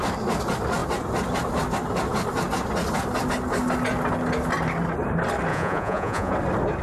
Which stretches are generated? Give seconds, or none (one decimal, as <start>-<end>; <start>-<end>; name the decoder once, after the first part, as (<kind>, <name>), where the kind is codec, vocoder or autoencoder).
5.5-6.3 (vocoder, Vocos)